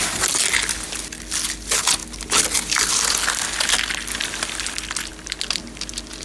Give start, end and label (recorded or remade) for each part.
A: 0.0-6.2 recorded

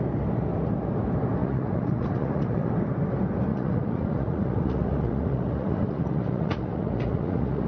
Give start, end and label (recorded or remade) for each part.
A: 0.0-1.4 recorded; 1.4-2.7 remade; 2.7-3.5 recorded; 3.5-7.7 remade

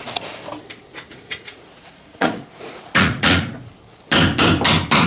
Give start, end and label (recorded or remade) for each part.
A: 0.0-0.9 recorded; 0.9-3.7 remade; 3.7-5.1 recorded

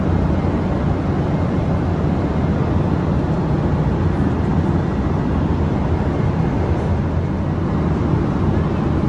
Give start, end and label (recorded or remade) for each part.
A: 0.0-9.1 recorded

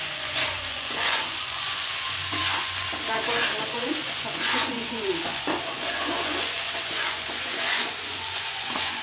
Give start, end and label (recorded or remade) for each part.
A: 0.0-2.9 remade; 2.9-3.6 recorded; 3.6-9.0 remade

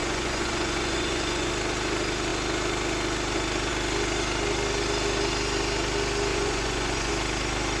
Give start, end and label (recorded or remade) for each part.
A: 0.0-1.5 remade; 1.5-6.3 recorded; 6.3-7.1 remade; 7.1-7.8 recorded

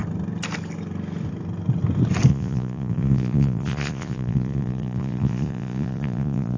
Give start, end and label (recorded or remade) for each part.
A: 0.0-2.3 recorded; 2.3-6.6 remade